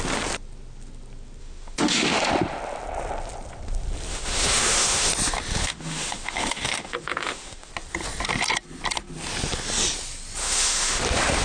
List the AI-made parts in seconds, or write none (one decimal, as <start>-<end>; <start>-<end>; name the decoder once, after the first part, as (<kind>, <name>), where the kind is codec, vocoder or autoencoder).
1.4-2.2 (autoencoder, DAC-VAE); 4.1-5.1; 5.6-7.7; 10.4-11.0

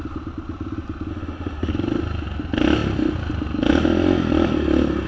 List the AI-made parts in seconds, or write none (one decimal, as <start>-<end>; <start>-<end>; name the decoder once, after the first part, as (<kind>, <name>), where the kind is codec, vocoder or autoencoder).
1.1-1.7 (autoencoder, DAC-VAE)

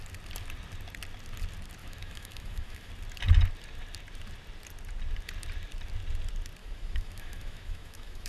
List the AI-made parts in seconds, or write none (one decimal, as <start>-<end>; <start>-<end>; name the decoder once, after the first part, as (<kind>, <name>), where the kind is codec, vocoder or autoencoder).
1.8-2.9 (autoencoder, DAC-VAE); 6.6-8.3

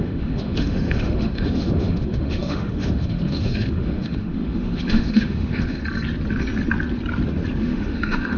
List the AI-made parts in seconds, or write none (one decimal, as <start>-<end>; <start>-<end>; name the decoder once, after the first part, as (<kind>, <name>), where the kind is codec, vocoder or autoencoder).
0.0-5.8 (autoencoder, DAC-VAE); 7.6-8.4

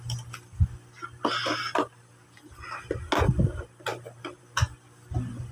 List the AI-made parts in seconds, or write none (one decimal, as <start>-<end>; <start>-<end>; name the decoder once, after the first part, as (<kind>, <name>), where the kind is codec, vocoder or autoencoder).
none